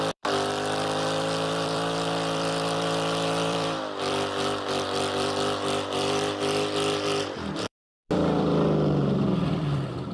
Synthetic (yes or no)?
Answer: yes